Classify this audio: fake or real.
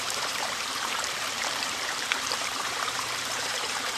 fake